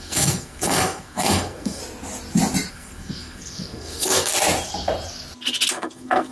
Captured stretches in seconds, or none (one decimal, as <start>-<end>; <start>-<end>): 1.8-2.7; 4.3-5.7